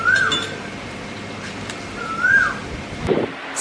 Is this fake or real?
real